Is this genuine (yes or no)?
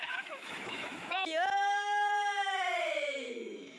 no